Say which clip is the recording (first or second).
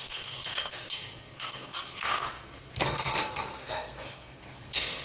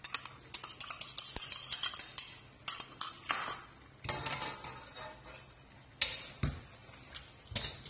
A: second